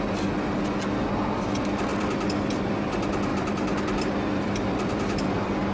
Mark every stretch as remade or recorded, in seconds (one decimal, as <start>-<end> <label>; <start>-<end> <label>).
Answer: 0.0-1.9 recorded; 1.9-2.7 remade; 2.7-3.3 recorded; 3.3-5.7 remade